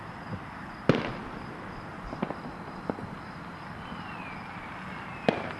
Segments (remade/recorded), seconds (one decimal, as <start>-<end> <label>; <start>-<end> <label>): 0.0-5.6 recorded